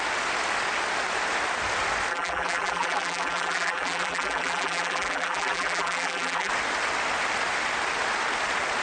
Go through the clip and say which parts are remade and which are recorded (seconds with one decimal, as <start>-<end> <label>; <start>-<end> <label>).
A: 0.0-2.1 recorded; 2.1-6.5 remade; 6.5-8.8 recorded